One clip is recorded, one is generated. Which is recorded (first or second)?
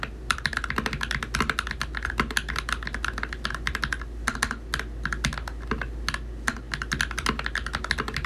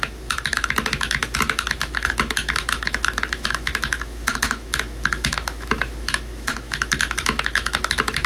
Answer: first